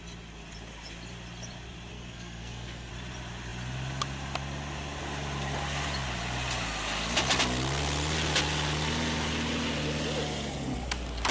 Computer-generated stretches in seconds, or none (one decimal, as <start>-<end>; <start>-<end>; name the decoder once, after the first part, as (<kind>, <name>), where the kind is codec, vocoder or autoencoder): 1.9-2.9 (codec, SNAC)